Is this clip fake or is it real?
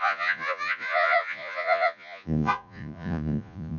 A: fake